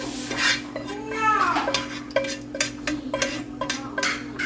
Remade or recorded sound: recorded